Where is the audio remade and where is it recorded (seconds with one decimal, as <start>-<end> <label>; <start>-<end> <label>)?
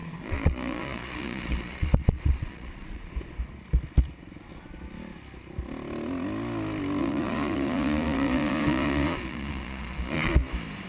0.0-3.1 remade; 3.1-7.0 recorded; 7.0-10.3 remade; 10.3-10.9 recorded